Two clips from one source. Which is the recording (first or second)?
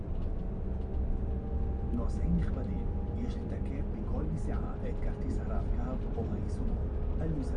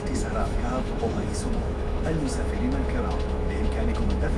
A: first